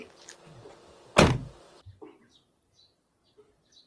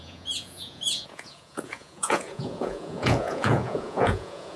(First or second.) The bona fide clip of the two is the first